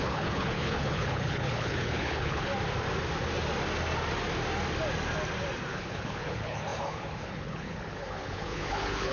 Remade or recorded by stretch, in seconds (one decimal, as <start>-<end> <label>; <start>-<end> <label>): 0.0-2.5 remade; 2.5-5.7 recorded; 5.7-9.1 remade